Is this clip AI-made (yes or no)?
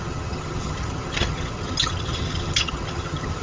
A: yes